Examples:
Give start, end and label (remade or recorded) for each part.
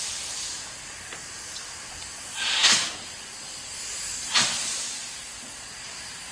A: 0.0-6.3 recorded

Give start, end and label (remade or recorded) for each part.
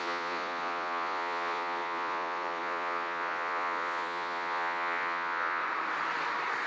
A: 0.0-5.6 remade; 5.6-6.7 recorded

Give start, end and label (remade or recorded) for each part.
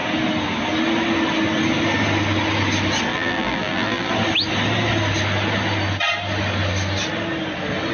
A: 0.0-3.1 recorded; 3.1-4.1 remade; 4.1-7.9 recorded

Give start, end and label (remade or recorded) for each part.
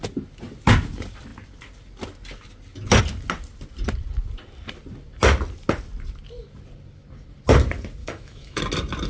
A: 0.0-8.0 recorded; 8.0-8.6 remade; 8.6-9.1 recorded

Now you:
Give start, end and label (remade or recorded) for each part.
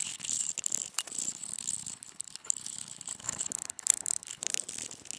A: 0.0-0.5 remade; 0.5-1.3 recorded; 1.3-4.4 remade; 4.4-5.2 recorded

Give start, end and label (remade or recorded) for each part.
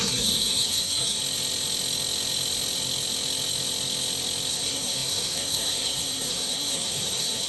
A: 0.0-1.2 remade; 1.2-4.5 recorded; 4.5-7.5 remade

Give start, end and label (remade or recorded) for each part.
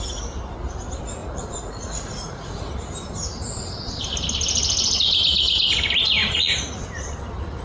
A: 0.0-1.2 recorded; 1.2-2.7 remade; 2.7-6.2 recorded; 6.2-6.8 remade; 6.8-7.6 recorded